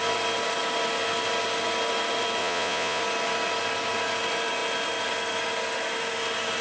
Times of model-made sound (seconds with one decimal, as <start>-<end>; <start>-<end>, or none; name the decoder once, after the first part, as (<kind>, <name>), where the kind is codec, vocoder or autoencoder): 2.4-3.0 (vocoder, Vocos)